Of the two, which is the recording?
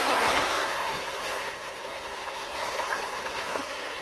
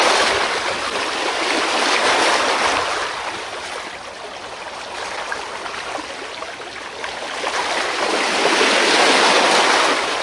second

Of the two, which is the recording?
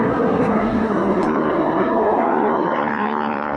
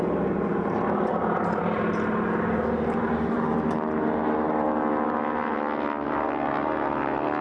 second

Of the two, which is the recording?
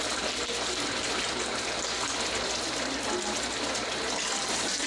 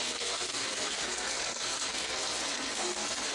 first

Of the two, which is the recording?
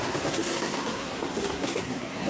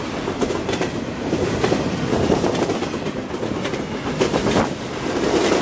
second